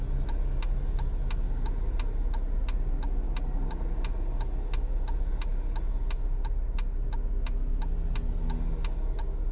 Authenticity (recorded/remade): recorded